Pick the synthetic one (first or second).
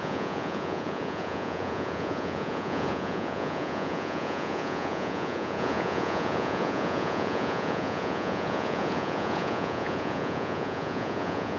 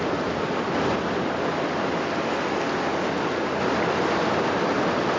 first